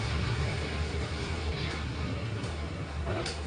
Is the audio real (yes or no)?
no